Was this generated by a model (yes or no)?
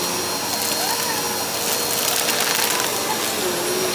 no